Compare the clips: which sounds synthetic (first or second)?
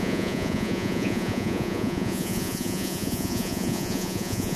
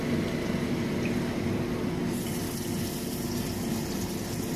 first